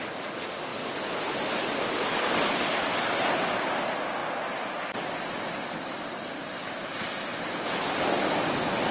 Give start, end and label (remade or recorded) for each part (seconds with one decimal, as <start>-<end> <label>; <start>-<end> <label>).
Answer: 0.0-8.9 recorded